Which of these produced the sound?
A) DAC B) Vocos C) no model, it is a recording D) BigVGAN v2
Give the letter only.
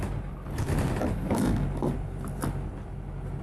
C